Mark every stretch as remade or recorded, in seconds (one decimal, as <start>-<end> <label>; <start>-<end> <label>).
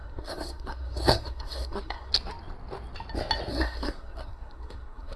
0.0-2.1 remade; 2.1-3.5 recorded; 3.5-5.2 remade